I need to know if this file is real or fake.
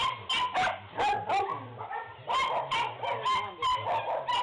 real